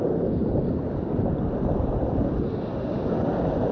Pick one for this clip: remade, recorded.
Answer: recorded